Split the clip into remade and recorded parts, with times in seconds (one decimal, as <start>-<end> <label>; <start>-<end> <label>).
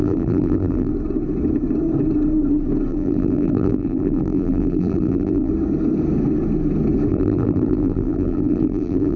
0.0-0.9 remade; 0.9-2.9 recorded; 2.9-5.5 remade; 5.5-7.1 recorded; 7.1-9.2 remade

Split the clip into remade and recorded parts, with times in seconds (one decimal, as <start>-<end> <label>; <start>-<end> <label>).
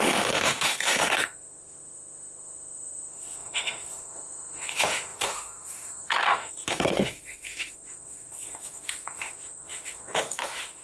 0.0-10.8 remade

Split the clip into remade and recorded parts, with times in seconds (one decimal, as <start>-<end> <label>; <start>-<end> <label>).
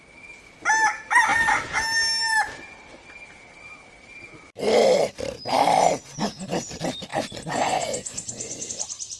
0.0-7.1 recorded; 7.1-8.7 remade; 8.7-9.2 recorded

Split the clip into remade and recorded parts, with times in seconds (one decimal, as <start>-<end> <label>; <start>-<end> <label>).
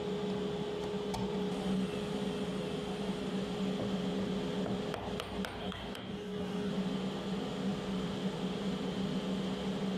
0.0-5.6 recorded; 5.6-6.7 remade; 6.7-10.0 recorded